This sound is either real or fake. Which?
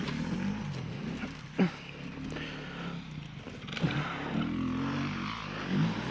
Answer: real